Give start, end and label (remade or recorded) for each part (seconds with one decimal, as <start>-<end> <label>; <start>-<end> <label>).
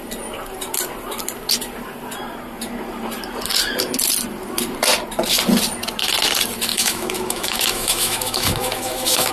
0.0-6.7 recorded; 6.7-9.3 remade